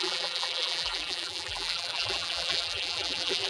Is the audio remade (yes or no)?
yes